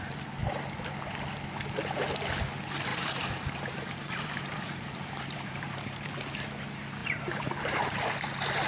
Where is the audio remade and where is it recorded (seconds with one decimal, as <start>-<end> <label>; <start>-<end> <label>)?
0.0-2.9 recorded; 2.9-6.1 remade; 6.1-7.0 recorded; 7.0-8.1 remade; 8.1-8.7 recorded